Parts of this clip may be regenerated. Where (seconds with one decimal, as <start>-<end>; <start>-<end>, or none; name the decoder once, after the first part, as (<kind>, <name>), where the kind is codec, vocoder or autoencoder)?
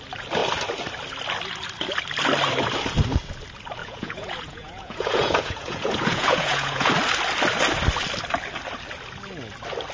3.8-6.9 (vocoder, Vocos)